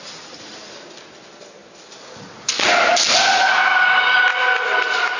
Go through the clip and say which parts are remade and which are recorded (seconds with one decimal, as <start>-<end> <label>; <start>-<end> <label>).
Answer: 0.0-5.2 recorded